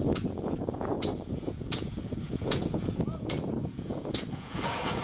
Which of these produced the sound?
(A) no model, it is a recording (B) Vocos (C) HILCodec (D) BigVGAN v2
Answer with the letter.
B